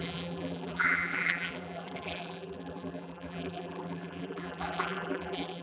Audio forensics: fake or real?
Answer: fake